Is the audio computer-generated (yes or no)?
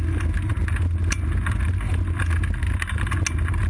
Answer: no